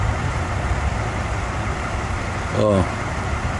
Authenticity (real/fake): fake